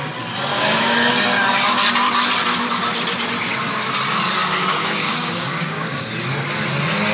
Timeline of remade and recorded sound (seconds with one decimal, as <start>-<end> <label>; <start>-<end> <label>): 0.0-0.5 recorded; 0.5-1.1 remade; 1.1-4.7 recorded; 4.7-6.1 remade; 6.1-7.1 recorded